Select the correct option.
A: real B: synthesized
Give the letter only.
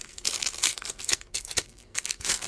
B